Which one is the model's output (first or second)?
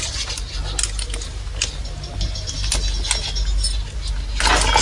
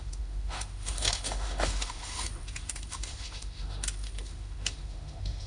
second